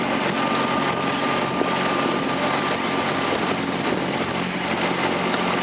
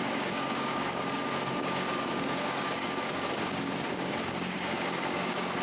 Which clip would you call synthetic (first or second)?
second